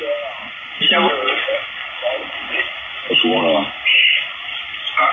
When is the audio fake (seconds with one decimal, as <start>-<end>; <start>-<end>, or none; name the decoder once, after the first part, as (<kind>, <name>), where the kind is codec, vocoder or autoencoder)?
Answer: none